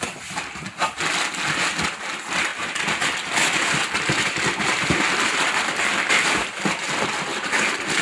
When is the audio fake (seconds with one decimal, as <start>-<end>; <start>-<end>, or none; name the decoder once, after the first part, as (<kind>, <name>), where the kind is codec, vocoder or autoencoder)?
none